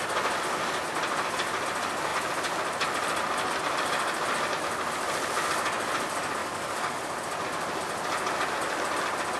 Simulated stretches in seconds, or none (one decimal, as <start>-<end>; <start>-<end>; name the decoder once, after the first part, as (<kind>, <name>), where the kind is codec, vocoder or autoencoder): 6.4-7.0 (codec, DAC)